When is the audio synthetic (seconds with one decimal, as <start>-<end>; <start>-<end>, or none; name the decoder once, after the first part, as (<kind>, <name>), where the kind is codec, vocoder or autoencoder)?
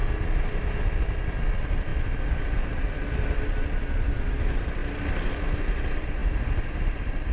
1.9-2.4 (vocoder, BigVGAN v2); 4.8-5.4; 6.2-7.3